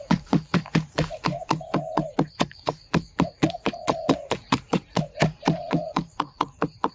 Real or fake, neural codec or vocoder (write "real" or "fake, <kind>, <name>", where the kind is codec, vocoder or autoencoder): fake, vocoder, Vocos